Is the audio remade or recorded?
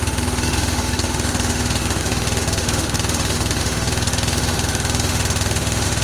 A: remade